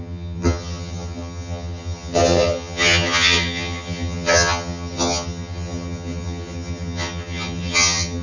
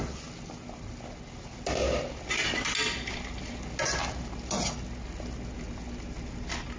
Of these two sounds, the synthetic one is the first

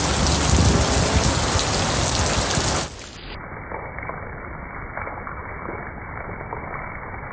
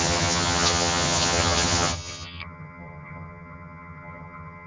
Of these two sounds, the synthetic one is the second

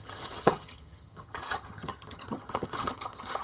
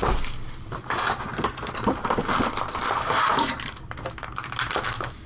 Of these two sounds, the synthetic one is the first